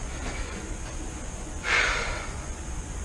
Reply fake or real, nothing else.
fake